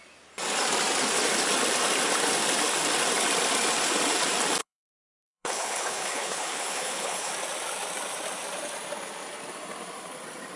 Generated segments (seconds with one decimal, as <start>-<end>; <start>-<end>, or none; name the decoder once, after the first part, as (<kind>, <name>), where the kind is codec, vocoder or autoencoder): 4.6-7.3 (codec, HILCodec)